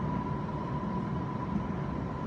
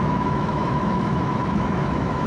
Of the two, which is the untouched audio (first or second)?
first